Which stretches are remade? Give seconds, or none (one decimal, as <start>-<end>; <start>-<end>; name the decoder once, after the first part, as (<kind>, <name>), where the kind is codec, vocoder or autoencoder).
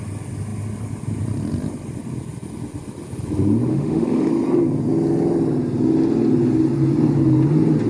3.7-4.3 (autoencoder, DAC-VAE)